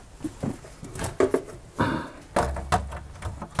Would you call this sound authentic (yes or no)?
yes